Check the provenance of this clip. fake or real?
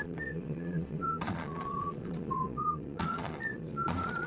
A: fake